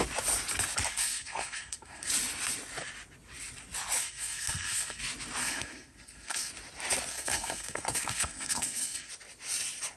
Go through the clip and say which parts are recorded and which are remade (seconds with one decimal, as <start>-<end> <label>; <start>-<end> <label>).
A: 0.0-0.9 recorded; 0.9-2.1 remade; 2.1-4.0 recorded; 4.0-5.0 remade; 5.0-5.4 recorded; 5.4-6.5 remade; 6.5-7.1 recorded; 7.1-9.1 remade; 9.1-10.0 recorded